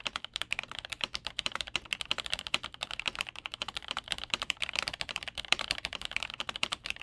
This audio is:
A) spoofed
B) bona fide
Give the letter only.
A